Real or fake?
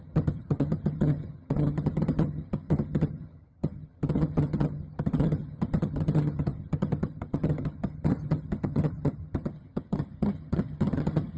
fake